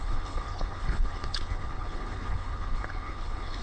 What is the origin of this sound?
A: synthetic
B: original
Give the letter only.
A